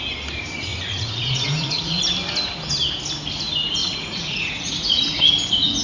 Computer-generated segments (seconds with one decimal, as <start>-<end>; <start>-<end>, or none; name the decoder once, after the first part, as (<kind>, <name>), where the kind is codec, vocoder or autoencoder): 0.7-2.0 (vocoder, Vocos); 3.8-5.2